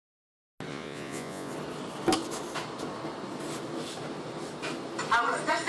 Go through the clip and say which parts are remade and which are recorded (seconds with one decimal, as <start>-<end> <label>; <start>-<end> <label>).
0.0-0.7 recorded; 0.7-1.5 remade; 1.5-5.7 recorded